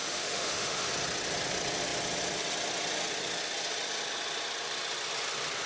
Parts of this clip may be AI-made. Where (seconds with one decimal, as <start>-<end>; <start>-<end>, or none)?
0.0-0.9

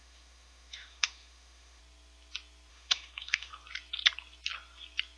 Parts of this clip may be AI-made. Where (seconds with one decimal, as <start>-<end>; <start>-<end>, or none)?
0.0-1.8; 2.7-3.5

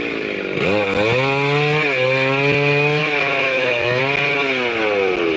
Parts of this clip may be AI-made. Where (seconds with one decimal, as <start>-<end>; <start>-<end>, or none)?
3.0-4.0

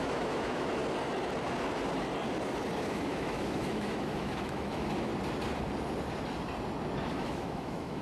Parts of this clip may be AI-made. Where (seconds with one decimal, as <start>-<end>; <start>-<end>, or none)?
0.0-0.8; 2.9-5.1; 7.1-8.0